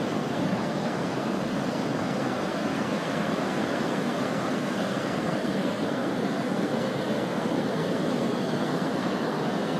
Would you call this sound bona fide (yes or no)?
no